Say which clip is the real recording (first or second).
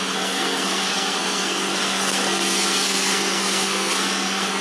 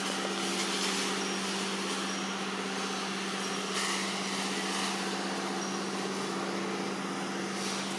second